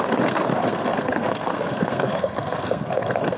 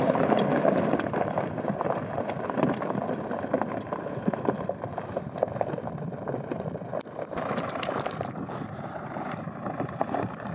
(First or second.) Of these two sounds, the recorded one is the second